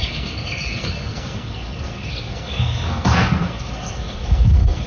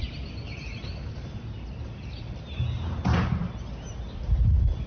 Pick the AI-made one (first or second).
first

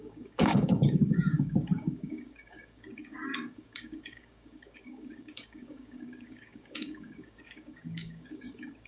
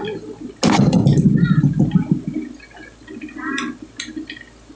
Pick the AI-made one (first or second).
first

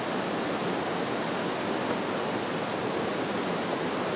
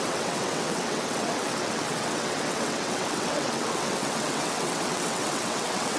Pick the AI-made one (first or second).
second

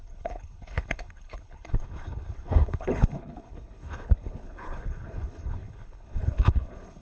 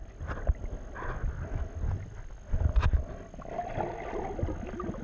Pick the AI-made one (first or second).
first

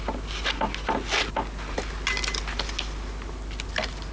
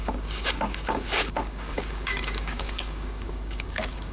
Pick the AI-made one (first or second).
second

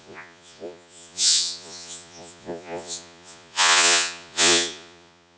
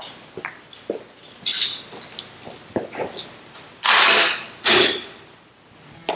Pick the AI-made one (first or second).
first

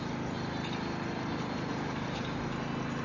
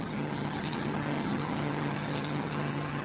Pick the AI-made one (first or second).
second